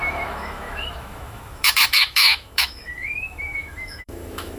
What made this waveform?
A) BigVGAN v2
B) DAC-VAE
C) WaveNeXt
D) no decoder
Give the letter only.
B